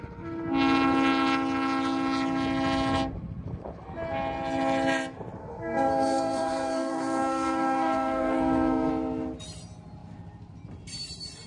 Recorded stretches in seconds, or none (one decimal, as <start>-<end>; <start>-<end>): 0.0-5.4; 8.9-11.5